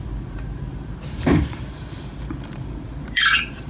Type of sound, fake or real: fake